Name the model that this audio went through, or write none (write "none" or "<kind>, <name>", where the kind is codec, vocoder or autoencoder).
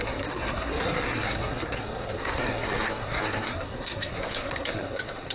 codec, SNAC